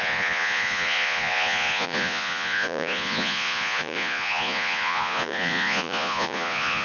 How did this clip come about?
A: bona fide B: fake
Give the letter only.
B